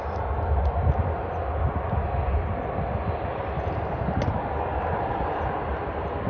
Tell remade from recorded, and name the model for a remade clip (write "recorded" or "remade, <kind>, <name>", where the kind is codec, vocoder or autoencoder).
recorded